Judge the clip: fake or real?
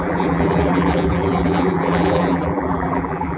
fake